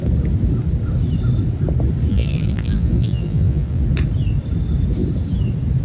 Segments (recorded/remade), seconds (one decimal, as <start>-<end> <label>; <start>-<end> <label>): 0.0-2.1 recorded; 2.1-3.8 remade; 3.8-5.8 recorded